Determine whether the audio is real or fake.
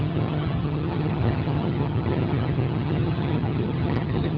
fake